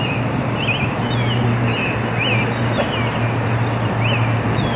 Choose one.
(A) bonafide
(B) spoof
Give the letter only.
A